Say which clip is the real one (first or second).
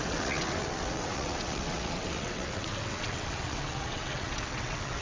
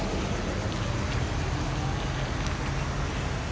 second